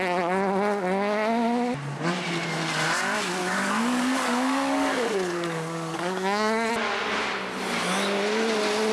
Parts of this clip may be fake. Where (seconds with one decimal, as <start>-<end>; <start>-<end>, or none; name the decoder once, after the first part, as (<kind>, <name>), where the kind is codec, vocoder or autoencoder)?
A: 3.4-6.7 (codec, DAC)